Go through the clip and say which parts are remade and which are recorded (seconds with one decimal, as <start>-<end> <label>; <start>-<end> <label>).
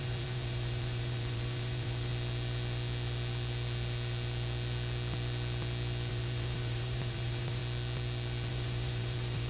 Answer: 0.0-2.1 remade; 2.1-6.1 recorded; 6.1-7.6 remade; 7.6-8.5 recorded; 8.5-9.5 remade